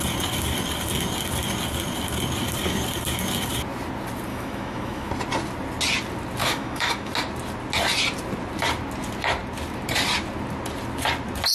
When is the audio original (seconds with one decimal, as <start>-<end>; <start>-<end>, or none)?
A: 0.0-4.3; 5.1-6.4; 7.1-11.5